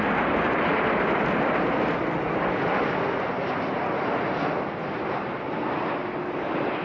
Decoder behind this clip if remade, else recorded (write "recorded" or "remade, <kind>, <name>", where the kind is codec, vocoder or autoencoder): recorded